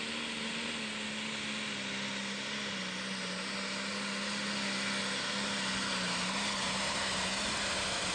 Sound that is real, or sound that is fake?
real